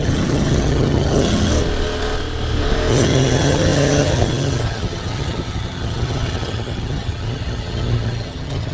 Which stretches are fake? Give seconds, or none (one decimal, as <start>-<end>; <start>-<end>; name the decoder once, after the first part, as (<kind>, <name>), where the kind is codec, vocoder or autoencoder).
0.0-1.5 (vocoder, HiFi-GAN); 2.9-8.7

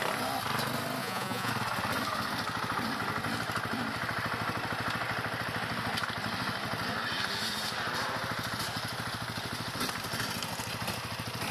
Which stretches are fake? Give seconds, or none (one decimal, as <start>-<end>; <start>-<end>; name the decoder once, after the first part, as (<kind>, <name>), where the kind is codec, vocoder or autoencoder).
1.0-1.5 (vocoder, Vocos)

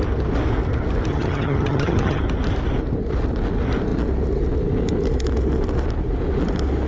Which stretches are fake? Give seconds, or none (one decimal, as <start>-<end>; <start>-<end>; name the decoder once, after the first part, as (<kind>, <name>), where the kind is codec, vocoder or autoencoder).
1.1-2.2 (vocoder, HiFi-GAN)

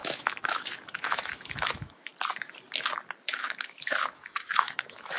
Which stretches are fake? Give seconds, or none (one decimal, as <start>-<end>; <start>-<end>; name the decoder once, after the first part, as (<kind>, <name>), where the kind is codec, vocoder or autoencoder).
0.0-2.1 (autoencoder, DAC-VAE); 3.3-5.2

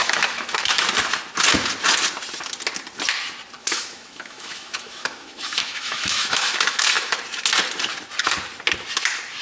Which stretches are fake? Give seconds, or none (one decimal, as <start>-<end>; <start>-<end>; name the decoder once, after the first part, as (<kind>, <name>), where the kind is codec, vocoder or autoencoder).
0.0-0.8 (autoencoder, DAC-VAE); 3.6-7.2

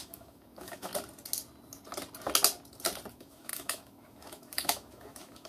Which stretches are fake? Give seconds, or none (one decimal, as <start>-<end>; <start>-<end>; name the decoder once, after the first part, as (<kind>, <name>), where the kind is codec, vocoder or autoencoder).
0.0-0.9 (autoencoder, DAC-VAE); 3.1-5.5

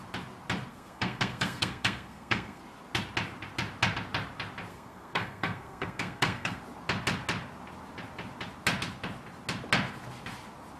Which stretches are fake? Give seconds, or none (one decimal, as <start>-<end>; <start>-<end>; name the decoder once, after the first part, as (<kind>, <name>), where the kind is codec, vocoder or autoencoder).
0.7-2.6 (codec, SNAC); 4.7-6.6

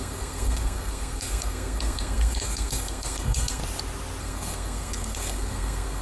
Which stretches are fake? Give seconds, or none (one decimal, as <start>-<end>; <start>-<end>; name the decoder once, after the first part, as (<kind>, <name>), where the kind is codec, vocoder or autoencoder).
0.0-3.6 (codec, SNAC); 4.2-6.0